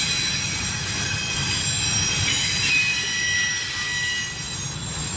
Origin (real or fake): real